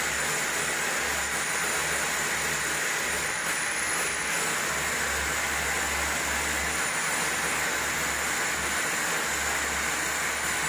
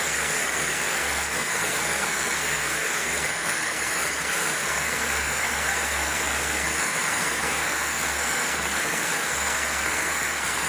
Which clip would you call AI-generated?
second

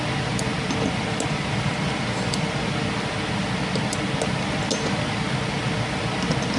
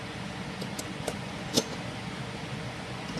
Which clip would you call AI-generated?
second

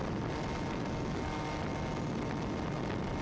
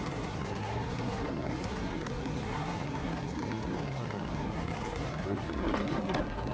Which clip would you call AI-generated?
second